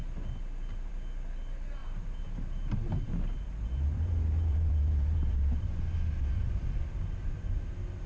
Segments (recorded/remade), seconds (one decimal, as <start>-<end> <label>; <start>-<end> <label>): 0.0-1.8 recorded; 1.8-5.8 remade; 5.8-8.1 recorded